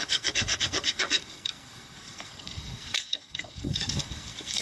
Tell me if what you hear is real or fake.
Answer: fake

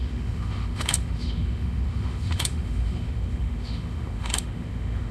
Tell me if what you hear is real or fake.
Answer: fake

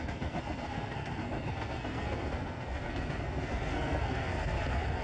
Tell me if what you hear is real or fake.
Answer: fake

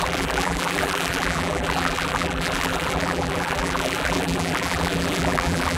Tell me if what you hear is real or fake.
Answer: fake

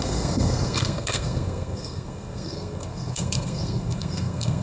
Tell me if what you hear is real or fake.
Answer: fake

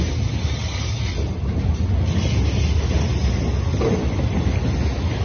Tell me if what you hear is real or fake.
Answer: real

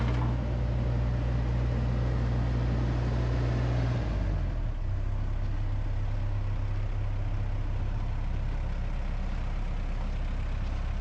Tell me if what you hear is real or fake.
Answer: real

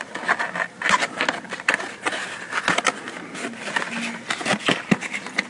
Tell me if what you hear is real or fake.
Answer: real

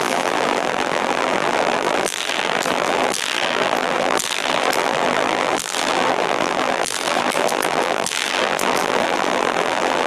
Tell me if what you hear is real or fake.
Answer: fake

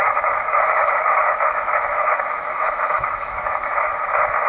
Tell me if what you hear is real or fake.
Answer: fake